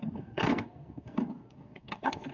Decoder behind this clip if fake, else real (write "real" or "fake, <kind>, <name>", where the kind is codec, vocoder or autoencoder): fake, codec, SNAC